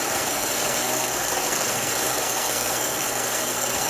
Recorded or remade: remade